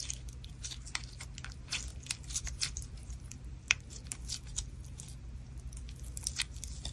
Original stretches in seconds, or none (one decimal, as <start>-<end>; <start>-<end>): 0.0-1.9; 4.3-6.9